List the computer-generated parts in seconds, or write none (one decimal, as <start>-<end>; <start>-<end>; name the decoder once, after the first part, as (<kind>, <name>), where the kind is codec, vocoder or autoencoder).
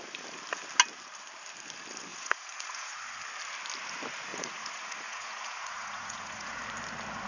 2.1-3.1 (vocoder, Vocos); 4.3-6.6